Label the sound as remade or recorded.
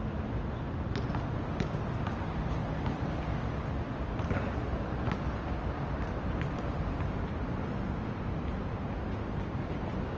recorded